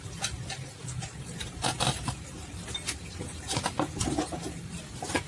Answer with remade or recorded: recorded